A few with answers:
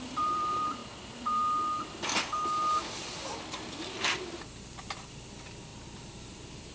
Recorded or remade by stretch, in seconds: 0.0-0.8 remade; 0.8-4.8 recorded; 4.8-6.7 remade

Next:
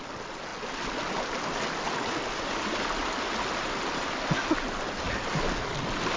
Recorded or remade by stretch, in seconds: 0.0-6.2 recorded